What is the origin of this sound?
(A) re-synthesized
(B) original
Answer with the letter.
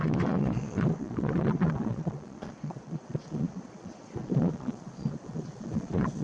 A